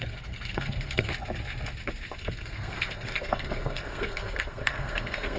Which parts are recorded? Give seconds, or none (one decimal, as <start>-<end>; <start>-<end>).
1.1-2.2